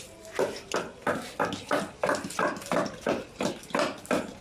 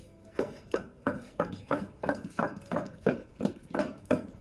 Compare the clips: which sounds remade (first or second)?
second